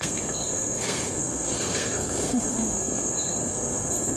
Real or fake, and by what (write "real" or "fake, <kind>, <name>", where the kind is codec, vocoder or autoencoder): fake, codec, SNAC